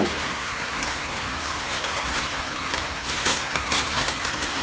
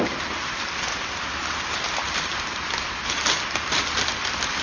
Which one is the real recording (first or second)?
second